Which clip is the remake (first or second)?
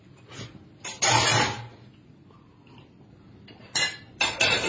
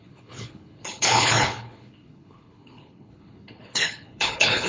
second